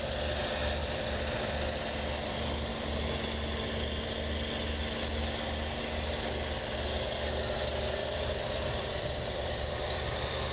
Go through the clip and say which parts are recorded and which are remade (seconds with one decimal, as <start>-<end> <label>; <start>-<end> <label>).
0.0-0.8 recorded; 0.8-1.5 remade; 1.5-8.0 recorded; 8.0-10.5 remade